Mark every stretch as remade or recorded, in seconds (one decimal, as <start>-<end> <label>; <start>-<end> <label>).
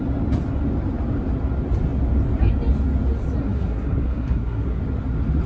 0.0-3.4 recorded; 3.4-4.8 remade; 4.8-5.5 recorded